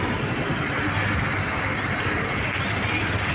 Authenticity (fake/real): real